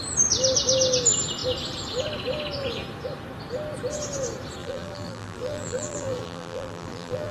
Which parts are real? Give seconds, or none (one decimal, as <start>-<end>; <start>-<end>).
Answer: 0.0-4.6